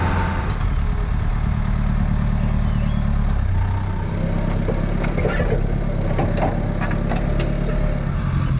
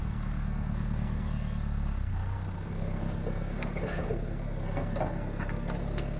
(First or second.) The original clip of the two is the first